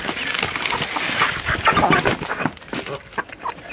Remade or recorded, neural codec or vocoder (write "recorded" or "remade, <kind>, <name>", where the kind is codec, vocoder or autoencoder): recorded